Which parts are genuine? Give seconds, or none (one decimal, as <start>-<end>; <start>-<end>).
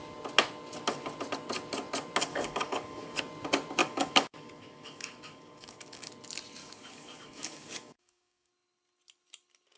0.0-2.3; 3.2-3.8; 6.1-6.6; 8.5-9.8